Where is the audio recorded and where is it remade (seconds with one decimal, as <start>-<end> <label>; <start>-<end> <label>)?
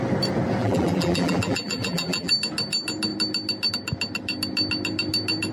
0.0-0.6 recorded; 0.6-2.3 remade; 2.3-5.5 recorded